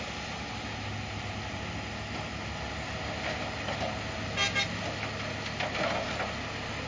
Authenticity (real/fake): real